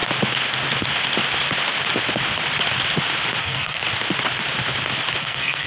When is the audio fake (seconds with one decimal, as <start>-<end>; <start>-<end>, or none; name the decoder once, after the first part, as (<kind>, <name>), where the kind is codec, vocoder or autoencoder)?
3.4-3.8 (codec, SNAC); 5.2-5.7